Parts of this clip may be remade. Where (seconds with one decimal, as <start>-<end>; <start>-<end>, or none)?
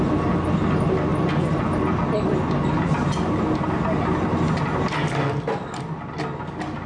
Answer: none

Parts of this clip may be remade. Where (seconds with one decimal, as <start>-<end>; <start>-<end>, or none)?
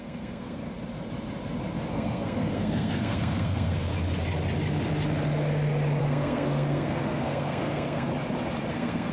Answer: 0.0-0.6; 1.9-3.9; 6.0-8.1; 8.7-9.1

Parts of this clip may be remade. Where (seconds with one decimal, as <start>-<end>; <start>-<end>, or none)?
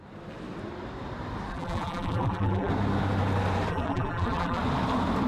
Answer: 1.5-2.7; 3.7-4.6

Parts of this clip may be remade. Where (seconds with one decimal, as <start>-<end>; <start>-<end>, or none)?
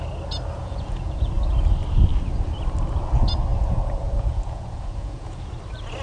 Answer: 0.6-1.3; 3.5-5.5